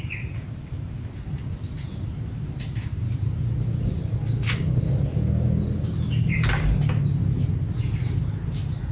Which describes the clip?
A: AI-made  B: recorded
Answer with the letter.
B